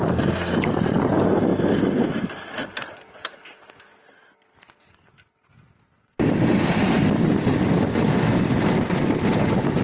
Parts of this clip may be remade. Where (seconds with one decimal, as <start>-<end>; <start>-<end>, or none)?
none